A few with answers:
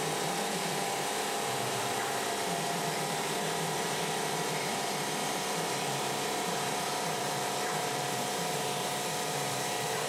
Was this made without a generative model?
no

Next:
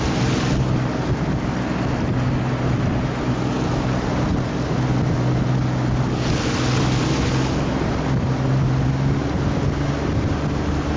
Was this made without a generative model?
yes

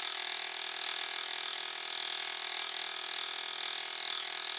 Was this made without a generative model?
yes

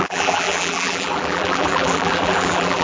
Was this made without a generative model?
no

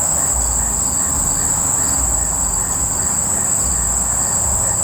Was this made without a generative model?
yes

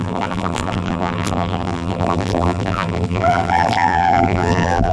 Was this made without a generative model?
no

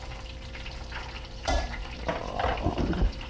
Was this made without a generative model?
no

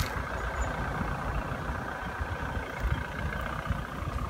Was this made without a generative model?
yes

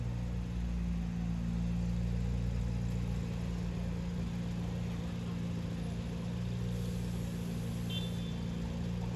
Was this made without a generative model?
yes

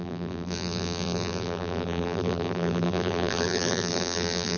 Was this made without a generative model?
no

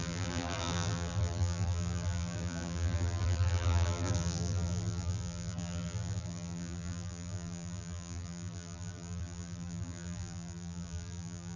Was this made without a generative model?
no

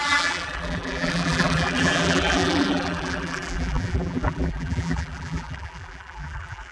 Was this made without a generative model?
no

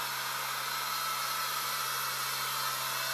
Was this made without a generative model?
yes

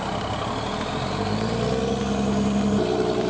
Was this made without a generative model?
yes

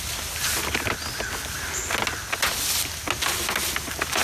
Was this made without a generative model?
yes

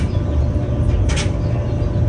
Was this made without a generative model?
yes